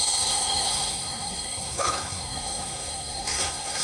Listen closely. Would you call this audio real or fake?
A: fake